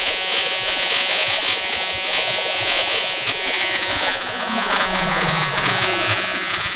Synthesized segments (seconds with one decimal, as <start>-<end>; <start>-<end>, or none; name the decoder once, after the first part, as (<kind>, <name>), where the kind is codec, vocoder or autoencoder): 0.0-6.8 (vocoder, Vocos)